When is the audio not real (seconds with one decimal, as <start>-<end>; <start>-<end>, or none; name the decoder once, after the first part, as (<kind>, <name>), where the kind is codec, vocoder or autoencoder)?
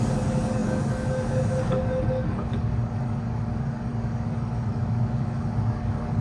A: 0.0-6.2 (codec, DAC)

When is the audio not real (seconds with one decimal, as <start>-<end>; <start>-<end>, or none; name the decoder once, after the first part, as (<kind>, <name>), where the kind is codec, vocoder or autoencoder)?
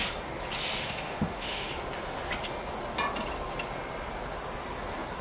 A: 0.8-1.7 (autoencoder, DAC-VAE)